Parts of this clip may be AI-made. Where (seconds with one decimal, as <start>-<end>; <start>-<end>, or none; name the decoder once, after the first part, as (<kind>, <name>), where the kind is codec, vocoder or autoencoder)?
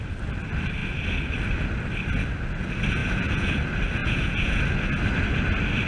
3.0-3.6 (vocoder, Vocos); 4.0-4.6